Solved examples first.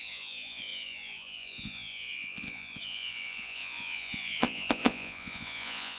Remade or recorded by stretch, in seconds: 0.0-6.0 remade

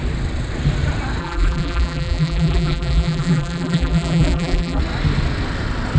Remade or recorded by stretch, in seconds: 0.0-1.2 recorded; 1.2-4.8 remade; 4.8-6.0 recorded

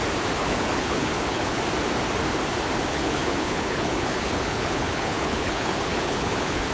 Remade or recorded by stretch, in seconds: 0.0-0.4 recorded; 0.4-1.6 remade; 1.6-2.9 recorded; 2.9-6.7 remade

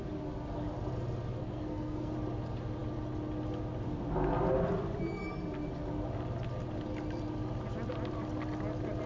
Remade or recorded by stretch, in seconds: 0.0-1.4 recorded; 1.4-2.1 remade; 2.1-9.1 recorded

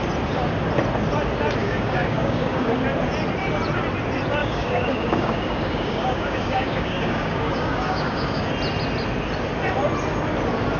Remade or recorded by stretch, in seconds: 0.0-1.6 recorded; 1.6-2.7 remade; 2.7-4.4 recorded; 4.4-8.5 remade; 8.5-10.8 recorded

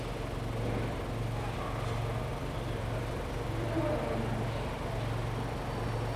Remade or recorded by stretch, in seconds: 0.0-2.3 recorded; 2.3-3.8 remade; 3.8-6.2 recorded

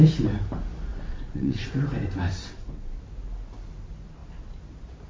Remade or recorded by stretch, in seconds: 0.0-0.9 recorded; 0.9-1.7 remade; 1.7-2.4 recorded; 2.4-2.9 remade; 2.9-5.1 recorded

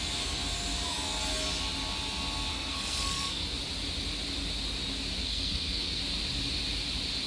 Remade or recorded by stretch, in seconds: 0.0-2.5 recorded; 2.5-3.5 remade; 3.5-5.2 recorded; 5.2-6.0 remade; 6.0-7.3 recorded